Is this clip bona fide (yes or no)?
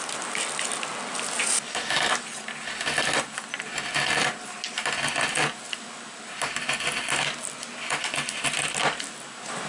yes